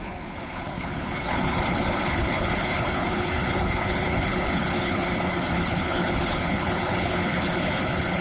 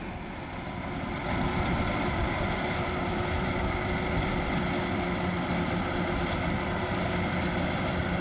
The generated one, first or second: first